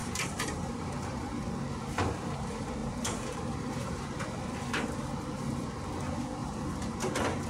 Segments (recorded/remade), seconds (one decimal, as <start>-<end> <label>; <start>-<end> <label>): 0.0-0.7 remade; 0.7-2.8 recorded; 2.8-4.2 remade; 4.2-6.4 recorded; 6.4-7.0 remade; 7.0-7.5 recorded